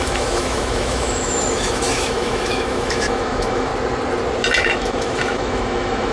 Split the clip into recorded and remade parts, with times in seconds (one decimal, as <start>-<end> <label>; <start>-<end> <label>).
0.0-3.7 remade; 3.7-4.6 recorded; 4.6-6.1 remade